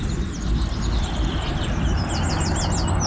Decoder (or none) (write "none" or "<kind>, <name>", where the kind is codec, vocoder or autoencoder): none